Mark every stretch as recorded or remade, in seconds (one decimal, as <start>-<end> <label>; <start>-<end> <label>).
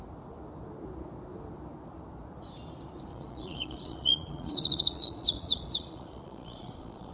0.0-3.1 recorded; 3.1-7.1 remade